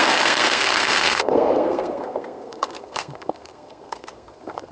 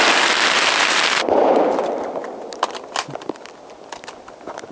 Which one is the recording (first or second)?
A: second